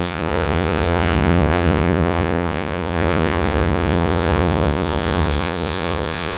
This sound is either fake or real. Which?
fake